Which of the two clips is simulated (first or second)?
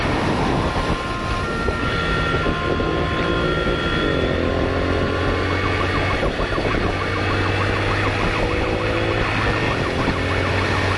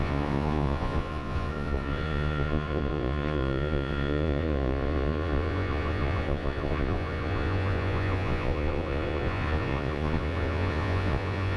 second